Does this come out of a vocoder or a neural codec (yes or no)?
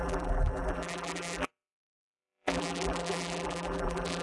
yes